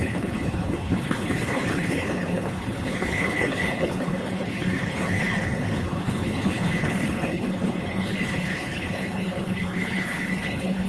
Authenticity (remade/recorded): remade